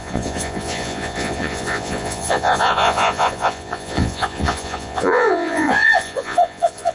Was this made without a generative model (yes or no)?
no